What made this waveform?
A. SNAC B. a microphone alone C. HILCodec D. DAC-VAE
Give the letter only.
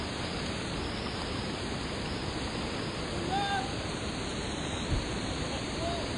B